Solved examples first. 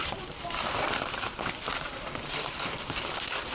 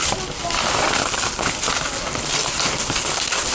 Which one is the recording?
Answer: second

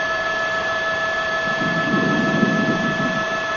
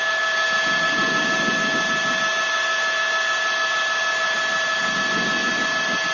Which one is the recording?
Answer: second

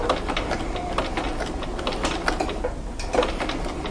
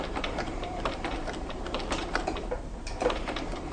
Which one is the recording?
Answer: first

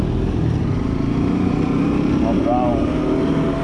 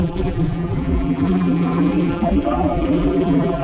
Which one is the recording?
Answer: first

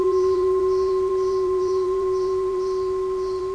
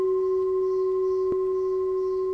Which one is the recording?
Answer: second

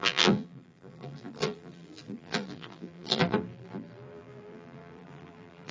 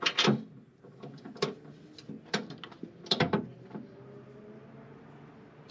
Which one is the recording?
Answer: second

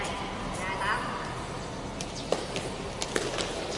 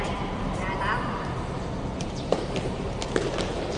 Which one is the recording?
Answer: first